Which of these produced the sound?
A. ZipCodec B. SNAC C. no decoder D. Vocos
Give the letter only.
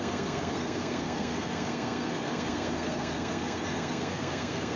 B